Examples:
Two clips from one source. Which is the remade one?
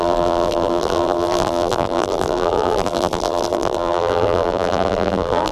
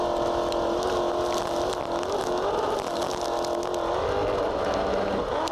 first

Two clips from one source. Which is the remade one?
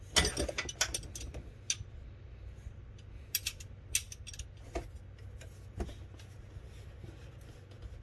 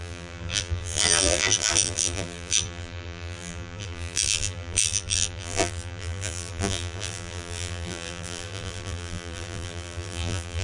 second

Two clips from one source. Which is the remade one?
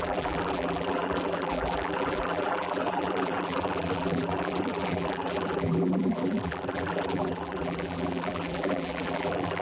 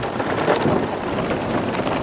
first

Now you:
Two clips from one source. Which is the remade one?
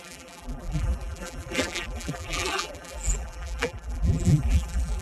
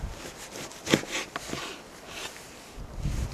first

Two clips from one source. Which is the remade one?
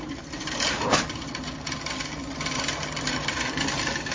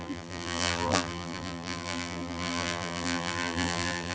second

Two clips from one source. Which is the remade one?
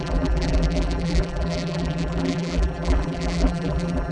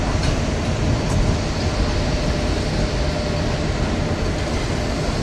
first